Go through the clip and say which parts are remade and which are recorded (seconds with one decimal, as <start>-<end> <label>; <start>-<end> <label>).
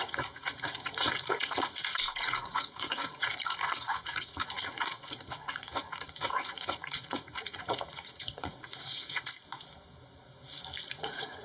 0.0-9.4 remade; 9.4-10.9 recorded; 10.9-11.4 remade